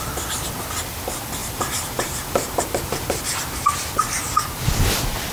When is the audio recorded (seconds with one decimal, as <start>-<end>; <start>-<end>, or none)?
0.0-1.4; 4.6-5.3